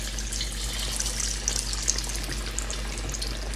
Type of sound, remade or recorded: recorded